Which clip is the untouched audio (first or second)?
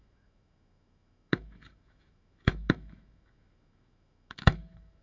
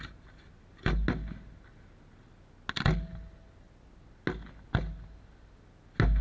second